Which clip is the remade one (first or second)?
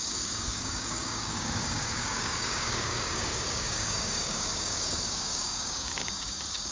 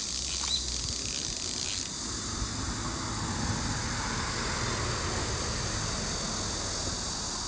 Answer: first